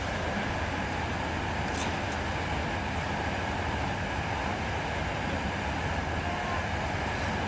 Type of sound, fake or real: real